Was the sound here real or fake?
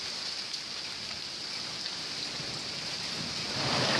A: real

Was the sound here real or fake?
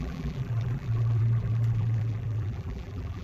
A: fake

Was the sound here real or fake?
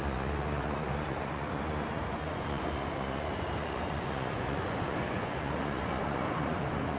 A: fake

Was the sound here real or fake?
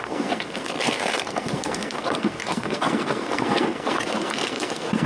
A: fake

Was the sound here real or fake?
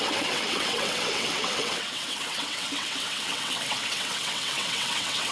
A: fake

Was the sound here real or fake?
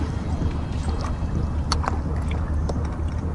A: real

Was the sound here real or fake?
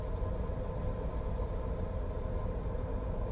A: real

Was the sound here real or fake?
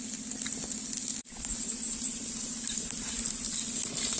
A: real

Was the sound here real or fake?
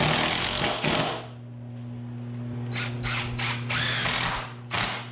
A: real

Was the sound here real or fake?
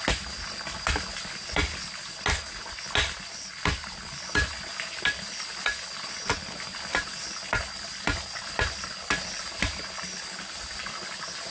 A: real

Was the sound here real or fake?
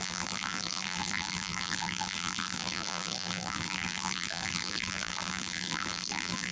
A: fake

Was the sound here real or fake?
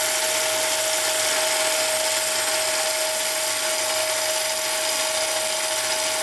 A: real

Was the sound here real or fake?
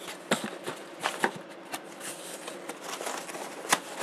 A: real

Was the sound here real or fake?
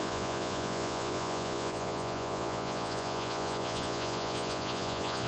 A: fake